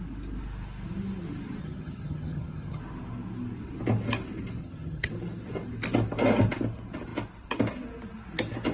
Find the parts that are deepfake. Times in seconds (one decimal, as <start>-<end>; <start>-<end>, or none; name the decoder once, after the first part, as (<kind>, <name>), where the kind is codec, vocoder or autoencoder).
1.6-2.8 (vocoder, HiFi-GAN); 4.6-5.1